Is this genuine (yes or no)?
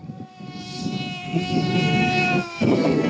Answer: no